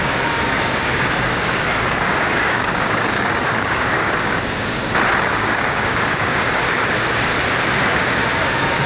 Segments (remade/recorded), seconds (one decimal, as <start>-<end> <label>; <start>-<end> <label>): 0.0-4.8 remade; 4.8-5.3 recorded; 5.3-7.3 remade; 7.3-8.0 recorded; 8.0-8.9 remade